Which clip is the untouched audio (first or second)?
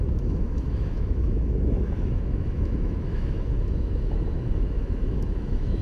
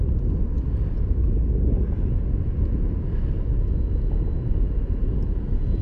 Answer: second